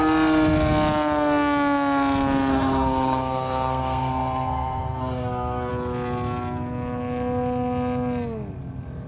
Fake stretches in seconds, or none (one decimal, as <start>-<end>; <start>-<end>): 2.5-5.7